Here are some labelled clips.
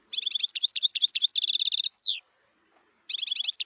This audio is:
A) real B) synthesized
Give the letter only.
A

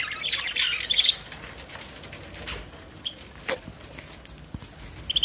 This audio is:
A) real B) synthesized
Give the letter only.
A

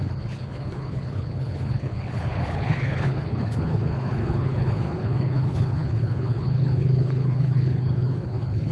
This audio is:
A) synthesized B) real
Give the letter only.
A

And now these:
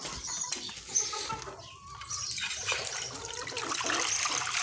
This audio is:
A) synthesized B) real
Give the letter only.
B